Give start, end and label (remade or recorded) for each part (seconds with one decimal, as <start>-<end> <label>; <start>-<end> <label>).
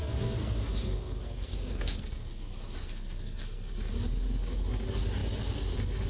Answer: 0.0-3.7 remade; 3.7-6.1 recorded